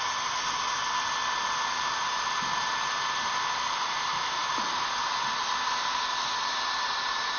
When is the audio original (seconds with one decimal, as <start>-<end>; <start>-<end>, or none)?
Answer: 0.0-7.4